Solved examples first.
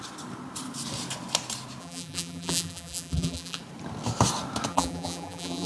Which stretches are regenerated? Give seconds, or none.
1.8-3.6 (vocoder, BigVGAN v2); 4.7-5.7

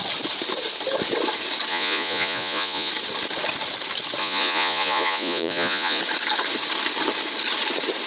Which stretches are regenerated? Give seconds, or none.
1.7-2.9 (vocoder, Vocos); 4.2-6.0

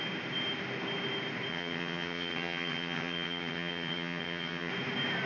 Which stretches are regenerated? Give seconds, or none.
1.5-4.7 (vocoder, HiFi-GAN)

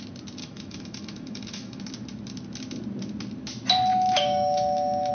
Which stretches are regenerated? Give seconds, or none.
0.4-1.8 (autoencoder, DAC-VAE); 3.9-5.1

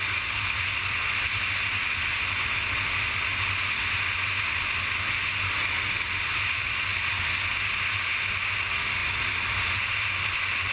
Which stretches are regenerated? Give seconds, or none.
none

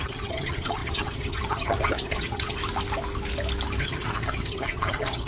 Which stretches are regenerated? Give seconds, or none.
0.0-2.6 (vocoder, HiFi-GAN); 3.8-5.3

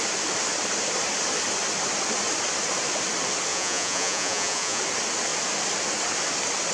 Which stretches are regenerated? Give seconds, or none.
3.5-4.8 (vocoder, Vocos)

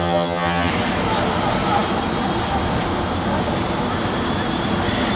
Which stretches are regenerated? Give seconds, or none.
0.0-0.7 (vocoder, HiFi-GAN)